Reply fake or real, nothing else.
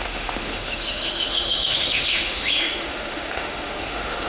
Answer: fake